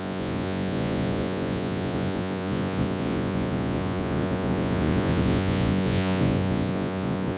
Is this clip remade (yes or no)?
yes